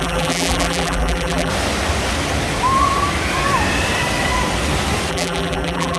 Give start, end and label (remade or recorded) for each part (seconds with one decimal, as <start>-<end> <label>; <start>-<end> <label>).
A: 0.0-1.5 remade; 1.5-5.1 recorded; 5.1-6.0 remade